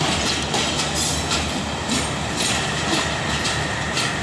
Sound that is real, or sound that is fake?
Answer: real